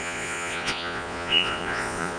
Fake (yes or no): yes